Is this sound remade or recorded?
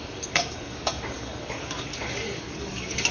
remade